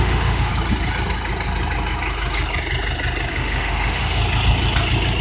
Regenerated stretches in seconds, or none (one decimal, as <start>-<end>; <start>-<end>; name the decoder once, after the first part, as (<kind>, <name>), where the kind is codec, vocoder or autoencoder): 0.0-0.5 (autoencoder, DAC-VAE); 3.3-4.2